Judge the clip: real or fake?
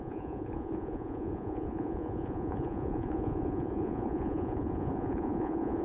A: fake